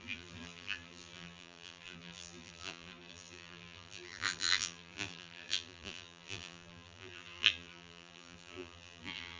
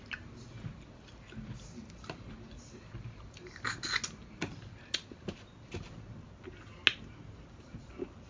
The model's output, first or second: first